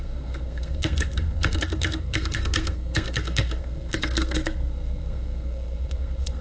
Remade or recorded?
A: remade